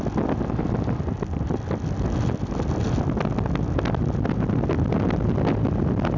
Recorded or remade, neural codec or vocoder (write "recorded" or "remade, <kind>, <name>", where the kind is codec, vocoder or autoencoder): recorded